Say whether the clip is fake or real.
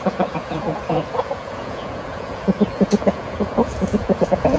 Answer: fake